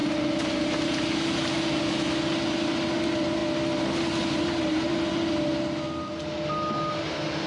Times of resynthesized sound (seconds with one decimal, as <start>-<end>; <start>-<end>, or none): 0.0-1.4